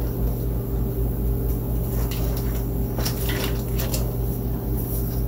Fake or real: real